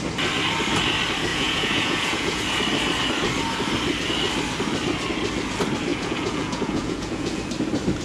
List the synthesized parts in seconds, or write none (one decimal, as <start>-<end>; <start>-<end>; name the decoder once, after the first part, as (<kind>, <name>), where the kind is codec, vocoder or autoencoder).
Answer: 1.3-2.4 (vocoder, Vocos); 5.9-7.4